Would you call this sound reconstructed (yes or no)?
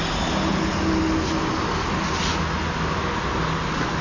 no